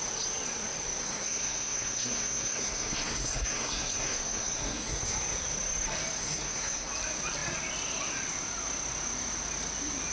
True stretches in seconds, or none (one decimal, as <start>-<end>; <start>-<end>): 0.0-1.0; 5.0-6.2; 6.9-10.1

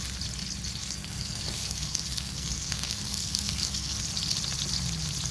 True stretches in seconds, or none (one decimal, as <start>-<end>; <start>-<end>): 0.0-0.8; 4.0-5.3